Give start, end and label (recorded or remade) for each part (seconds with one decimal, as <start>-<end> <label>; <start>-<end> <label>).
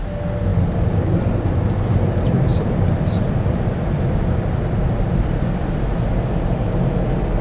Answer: 0.0-0.5 recorded; 0.5-2.0 remade; 2.0-2.5 recorded; 2.5-5.8 remade; 5.8-7.4 recorded